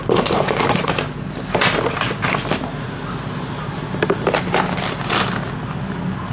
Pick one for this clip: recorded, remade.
recorded